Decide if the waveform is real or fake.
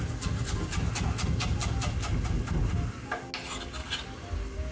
real